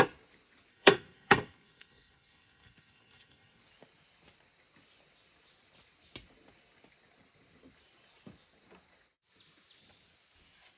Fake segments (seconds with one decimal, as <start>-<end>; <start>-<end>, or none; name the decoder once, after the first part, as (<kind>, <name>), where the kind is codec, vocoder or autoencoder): 0.7-3.6 (codec, SNAC)